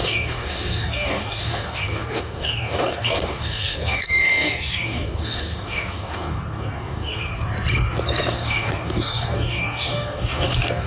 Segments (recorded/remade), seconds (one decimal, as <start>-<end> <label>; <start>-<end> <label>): 0.0-7.3 remade; 7.3-8.3 recorded; 8.3-10.9 remade